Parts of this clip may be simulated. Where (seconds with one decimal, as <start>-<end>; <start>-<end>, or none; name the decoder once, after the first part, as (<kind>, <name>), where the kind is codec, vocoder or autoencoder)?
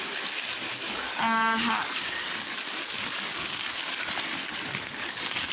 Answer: 0.8-4.1 (codec, DAC); 4.7-5.5